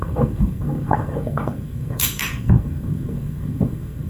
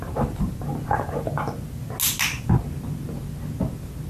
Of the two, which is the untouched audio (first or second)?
second